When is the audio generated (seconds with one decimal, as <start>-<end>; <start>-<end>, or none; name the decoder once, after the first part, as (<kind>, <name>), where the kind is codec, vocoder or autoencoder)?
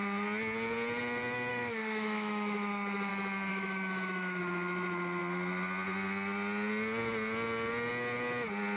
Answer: 1.5-3.1 (autoencoder, DAC-VAE); 3.5-4.4